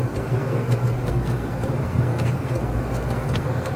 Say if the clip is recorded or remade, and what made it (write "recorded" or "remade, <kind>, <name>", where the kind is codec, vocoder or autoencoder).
remade, codec, SNAC